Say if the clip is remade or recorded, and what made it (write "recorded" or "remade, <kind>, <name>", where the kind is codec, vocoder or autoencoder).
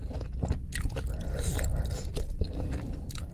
recorded